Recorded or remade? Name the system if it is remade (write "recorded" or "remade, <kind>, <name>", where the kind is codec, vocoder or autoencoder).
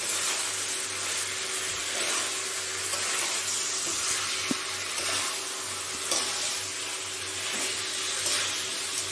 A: recorded